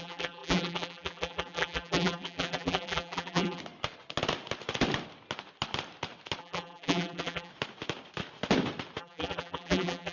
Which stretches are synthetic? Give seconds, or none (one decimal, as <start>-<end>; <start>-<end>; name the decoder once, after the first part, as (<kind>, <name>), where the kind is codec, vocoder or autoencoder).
0.0-3.6 (vocoder, BigVGAN v2); 6.4-7.5; 9.0-10.1